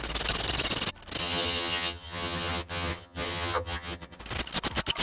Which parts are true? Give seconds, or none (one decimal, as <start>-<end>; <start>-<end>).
0.0-1.2; 4.2-5.0